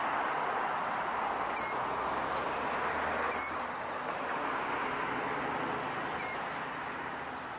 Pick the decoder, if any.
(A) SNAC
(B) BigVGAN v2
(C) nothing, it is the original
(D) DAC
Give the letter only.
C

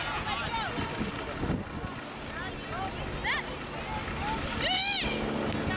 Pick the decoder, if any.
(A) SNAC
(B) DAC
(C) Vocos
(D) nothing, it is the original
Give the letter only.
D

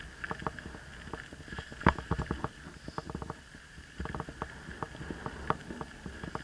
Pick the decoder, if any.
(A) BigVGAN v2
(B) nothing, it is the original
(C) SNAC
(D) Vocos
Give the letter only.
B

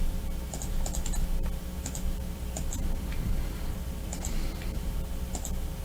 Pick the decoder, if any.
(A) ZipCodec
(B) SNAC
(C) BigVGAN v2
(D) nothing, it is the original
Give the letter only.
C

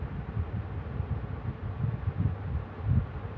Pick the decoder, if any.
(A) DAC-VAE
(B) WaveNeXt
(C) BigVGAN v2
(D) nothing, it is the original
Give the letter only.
D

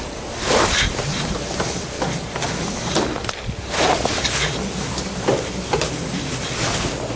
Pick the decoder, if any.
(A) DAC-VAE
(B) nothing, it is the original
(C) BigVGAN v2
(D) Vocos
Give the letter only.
B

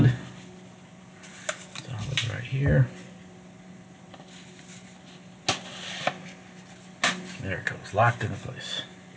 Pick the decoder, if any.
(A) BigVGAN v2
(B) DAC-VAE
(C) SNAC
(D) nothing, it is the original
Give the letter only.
D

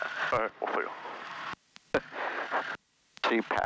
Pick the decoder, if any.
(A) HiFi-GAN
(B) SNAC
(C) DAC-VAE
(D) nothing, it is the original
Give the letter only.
D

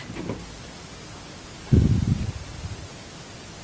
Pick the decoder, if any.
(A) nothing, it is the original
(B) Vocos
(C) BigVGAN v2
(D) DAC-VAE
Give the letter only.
A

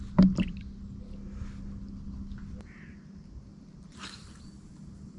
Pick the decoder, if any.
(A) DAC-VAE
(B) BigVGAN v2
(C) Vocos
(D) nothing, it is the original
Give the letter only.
D